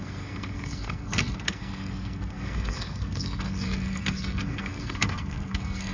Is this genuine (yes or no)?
no